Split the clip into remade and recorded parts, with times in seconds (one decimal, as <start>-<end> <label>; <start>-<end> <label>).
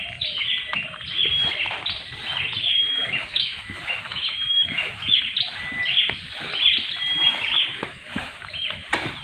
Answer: 0.0-2.9 recorded; 2.9-5.2 remade; 5.2-7.7 recorded; 7.7-8.4 remade; 8.4-9.2 recorded